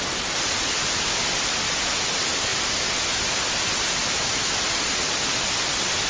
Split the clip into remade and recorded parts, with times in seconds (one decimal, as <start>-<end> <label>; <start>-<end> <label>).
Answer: 0.0-6.1 recorded